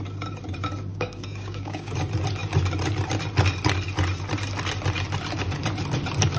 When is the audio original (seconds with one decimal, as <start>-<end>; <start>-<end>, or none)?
0.0-0.9; 1.9-6.4